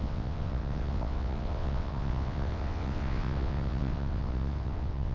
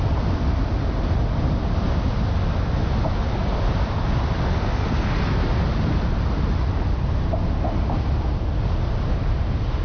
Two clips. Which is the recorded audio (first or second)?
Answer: second